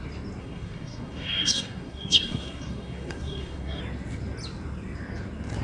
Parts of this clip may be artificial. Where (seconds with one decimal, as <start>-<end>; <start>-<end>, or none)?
0.4-3.8